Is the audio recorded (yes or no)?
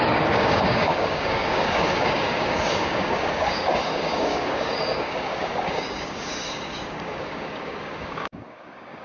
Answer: no